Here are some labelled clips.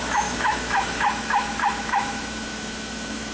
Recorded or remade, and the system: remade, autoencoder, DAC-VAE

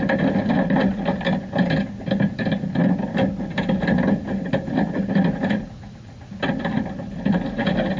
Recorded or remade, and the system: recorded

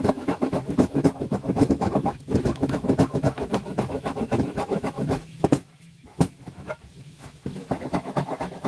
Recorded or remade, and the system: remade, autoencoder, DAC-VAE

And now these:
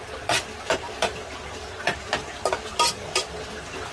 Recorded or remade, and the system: recorded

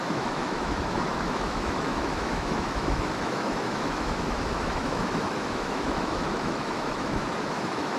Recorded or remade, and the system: remade, autoencoder, DAC-VAE